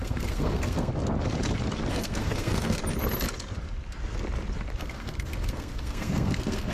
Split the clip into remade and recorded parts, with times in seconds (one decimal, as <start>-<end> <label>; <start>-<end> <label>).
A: 0.0-0.9 remade; 0.9-1.9 recorded; 1.9-2.8 remade; 2.8-4.8 recorded; 4.8-6.7 remade